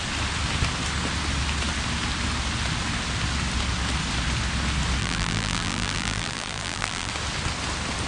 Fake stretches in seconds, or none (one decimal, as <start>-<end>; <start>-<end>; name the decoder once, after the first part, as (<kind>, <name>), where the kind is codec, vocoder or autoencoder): 5.0-7.1 (vocoder, BigVGAN v2)